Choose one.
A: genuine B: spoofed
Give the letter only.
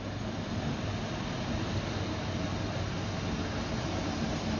A